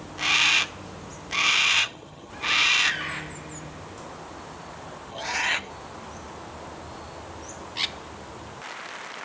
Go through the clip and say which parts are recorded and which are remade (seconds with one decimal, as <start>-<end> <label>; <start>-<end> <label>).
0.0-1.8 recorded; 1.8-2.3 remade; 2.3-5.1 recorded; 5.1-5.7 remade; 5.7-9.2 recorded